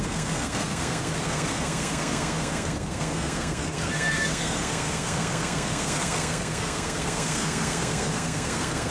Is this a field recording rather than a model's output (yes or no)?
no